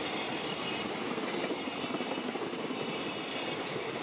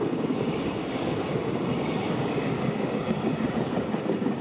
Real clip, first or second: first